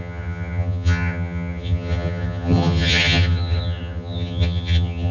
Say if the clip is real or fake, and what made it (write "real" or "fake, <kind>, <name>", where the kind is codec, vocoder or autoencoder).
fake, vocoder, HiFi-GAN